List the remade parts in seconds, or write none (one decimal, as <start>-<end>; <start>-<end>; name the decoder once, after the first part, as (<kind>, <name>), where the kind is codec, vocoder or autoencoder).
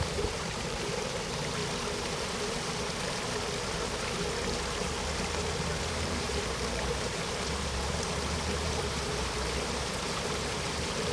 0.0-1.6 (vocoder, BigVGAN v2); 5.9-11.1